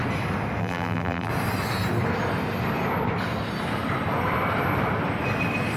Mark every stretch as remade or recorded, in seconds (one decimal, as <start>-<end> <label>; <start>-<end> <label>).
0.0-0.6 recorded; 0.6-1.3 remade; 1.3-5.8 recorded